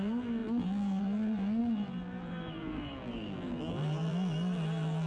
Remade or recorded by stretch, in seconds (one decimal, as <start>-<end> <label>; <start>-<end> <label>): 0.0-5.1 remade